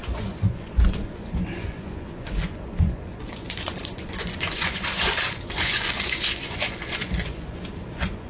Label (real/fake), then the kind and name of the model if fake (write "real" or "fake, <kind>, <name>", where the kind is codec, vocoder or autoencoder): fake, vocoder, Vocos